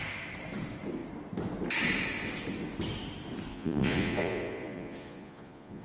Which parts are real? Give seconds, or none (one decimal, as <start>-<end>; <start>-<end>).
0.0-3.5